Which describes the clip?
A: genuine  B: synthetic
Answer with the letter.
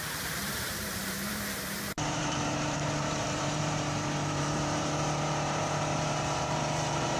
B